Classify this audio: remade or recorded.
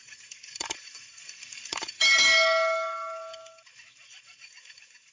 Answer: remade